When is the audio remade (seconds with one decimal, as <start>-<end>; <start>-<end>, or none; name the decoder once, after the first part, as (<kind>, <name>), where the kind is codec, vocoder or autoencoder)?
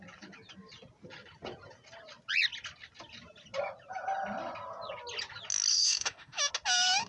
5.7-6.5 (autoencoder, DAC-VAE)